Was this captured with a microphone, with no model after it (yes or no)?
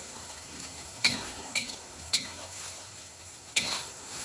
no